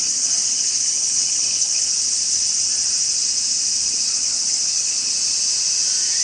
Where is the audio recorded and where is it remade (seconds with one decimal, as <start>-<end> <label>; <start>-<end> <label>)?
0.0-2.4 remade; 2.4-4.2 recorded; 4.2-5.1 remade; 5.1-6.2 recorded

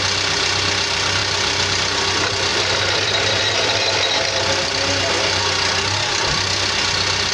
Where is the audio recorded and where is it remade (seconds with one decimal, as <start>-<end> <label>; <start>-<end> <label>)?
0.0-7.3 recorded